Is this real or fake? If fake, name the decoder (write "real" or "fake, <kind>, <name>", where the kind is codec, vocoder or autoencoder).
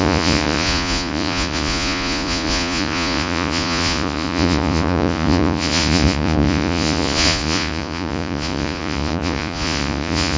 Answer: fake, vocoder, Vocos